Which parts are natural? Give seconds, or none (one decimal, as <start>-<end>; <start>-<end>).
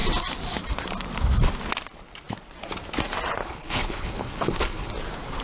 0.0-3.4; 4.9-5.4